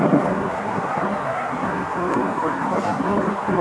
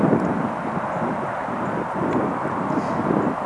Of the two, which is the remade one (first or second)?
first